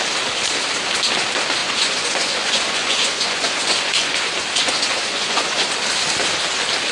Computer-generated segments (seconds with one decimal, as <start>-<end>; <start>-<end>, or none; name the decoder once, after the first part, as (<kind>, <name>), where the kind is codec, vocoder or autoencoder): 1.6-5.7 (vocoder, Vocos)